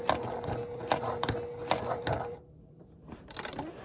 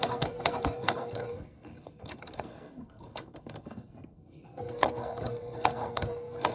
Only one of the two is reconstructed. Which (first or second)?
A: second